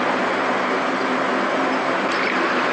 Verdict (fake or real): real